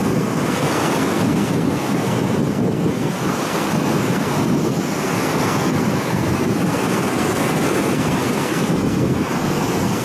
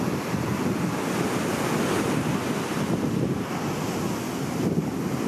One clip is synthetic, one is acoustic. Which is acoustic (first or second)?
second